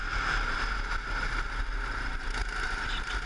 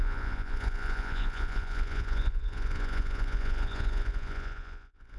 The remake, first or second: second